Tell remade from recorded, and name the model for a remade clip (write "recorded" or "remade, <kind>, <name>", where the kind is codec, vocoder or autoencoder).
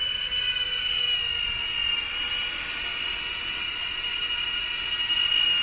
recorded